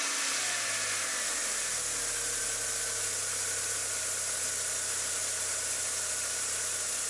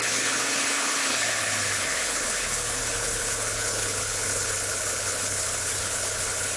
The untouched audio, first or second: first